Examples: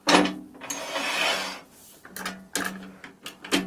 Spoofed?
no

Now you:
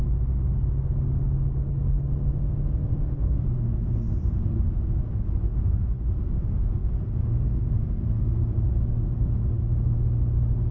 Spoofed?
no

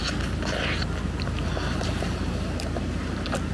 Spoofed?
no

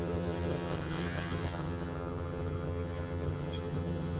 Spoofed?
yes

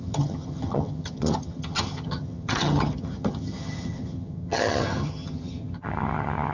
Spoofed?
yes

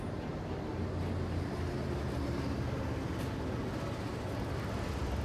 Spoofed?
no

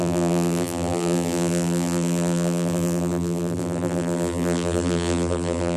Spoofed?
yes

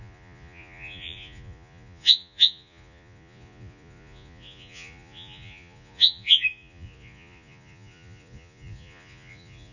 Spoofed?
yes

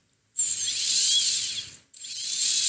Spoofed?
no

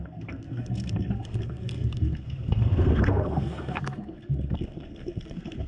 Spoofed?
yes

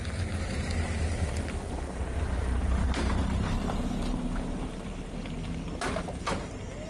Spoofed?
no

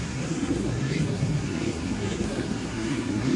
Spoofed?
yes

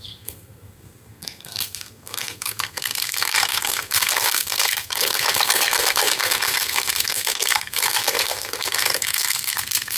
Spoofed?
yes